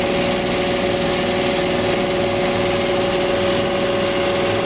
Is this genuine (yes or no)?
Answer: yes